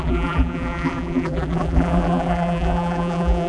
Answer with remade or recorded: remade